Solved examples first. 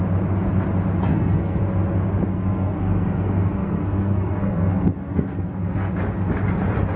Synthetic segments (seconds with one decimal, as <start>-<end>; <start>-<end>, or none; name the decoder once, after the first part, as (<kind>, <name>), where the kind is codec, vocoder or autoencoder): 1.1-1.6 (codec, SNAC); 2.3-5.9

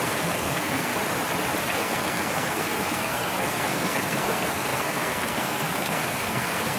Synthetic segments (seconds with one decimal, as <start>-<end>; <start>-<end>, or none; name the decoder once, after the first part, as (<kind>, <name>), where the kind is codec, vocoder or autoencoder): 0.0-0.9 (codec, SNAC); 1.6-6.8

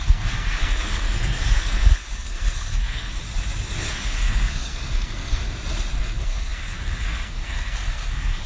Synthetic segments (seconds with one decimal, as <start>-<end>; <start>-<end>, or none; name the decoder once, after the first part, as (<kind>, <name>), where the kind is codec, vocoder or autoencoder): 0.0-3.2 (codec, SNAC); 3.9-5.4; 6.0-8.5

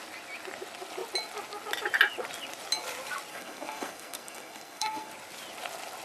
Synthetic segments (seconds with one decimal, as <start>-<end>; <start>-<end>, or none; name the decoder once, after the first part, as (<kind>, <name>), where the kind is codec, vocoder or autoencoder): 3.3-5.1 (codec, SNAC)

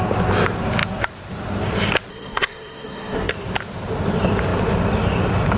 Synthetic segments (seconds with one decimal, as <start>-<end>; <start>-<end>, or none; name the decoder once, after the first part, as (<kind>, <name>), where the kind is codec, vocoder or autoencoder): 2.1-3.3 (codec, SNAC)